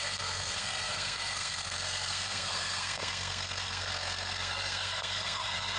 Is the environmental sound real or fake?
fake